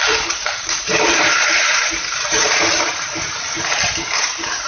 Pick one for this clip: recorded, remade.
remade